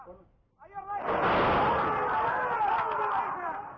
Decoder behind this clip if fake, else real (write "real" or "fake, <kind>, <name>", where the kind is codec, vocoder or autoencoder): real